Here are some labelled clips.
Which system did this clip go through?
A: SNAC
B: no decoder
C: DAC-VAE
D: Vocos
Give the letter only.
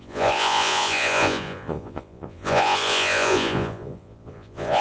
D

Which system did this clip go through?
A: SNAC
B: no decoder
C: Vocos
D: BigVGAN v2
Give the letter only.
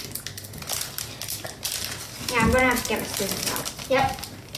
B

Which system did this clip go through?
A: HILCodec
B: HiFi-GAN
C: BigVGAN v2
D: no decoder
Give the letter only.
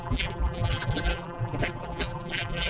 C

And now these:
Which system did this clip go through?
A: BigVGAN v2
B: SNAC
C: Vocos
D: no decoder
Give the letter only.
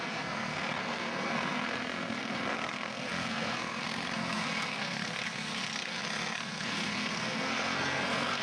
B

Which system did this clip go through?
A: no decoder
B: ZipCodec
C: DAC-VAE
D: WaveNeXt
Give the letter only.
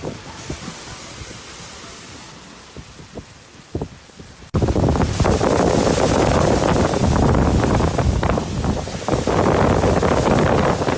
A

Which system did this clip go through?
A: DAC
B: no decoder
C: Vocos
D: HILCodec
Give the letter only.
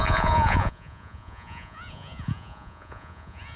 C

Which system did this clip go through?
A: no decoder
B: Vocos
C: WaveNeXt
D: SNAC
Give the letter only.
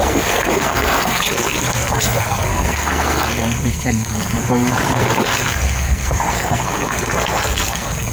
D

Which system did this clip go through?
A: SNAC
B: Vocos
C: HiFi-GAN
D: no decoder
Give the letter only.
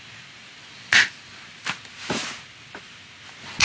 D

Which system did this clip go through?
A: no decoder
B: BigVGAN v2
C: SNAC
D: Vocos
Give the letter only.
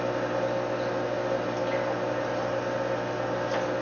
A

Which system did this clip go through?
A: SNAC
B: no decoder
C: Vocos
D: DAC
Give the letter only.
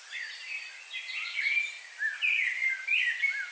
B